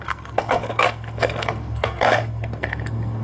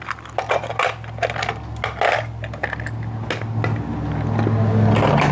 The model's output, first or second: first